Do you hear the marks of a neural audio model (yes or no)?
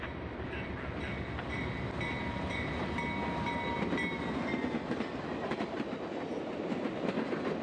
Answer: no